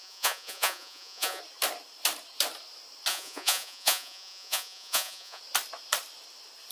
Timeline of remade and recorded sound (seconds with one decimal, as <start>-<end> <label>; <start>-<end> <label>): 0.0-1.4 remade; 1.4-3.1 recorded; 3.1-5.4 remade; 5.4-6.7 recorded